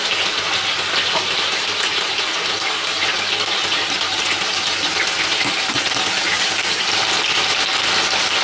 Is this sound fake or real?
real